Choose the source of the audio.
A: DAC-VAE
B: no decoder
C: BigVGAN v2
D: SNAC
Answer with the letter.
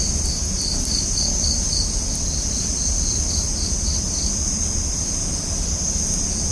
B